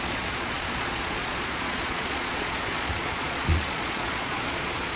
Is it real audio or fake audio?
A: fake